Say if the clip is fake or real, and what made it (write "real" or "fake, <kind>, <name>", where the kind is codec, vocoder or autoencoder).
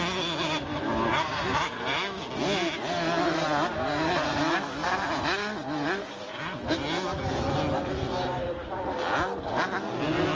real